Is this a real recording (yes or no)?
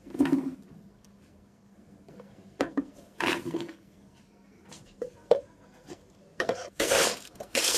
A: no